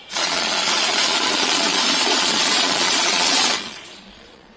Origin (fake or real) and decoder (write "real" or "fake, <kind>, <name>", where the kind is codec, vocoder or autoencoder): fake, vocoder, Vocos